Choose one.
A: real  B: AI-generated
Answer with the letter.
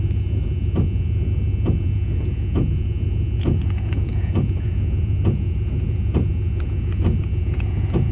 B